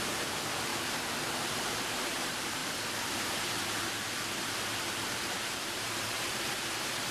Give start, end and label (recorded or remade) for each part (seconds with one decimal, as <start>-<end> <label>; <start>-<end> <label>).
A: 0.0-0.7 remade; 0.7-1.6 recorded; 1.6-2.6 remade; 2.6-3.1 recorded; 3.1-7.1 remade